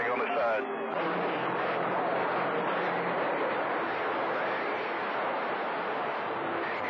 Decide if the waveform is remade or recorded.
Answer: recorded